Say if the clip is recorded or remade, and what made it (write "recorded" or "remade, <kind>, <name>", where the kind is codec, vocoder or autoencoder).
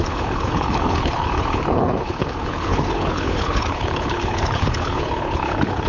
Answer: remade, codec, HILCodec